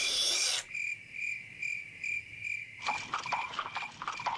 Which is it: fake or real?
real